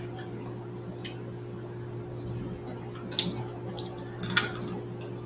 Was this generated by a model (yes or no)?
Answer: no